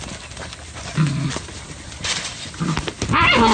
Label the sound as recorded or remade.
recorded